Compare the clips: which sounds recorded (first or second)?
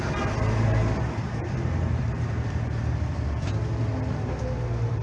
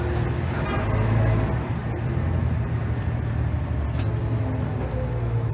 second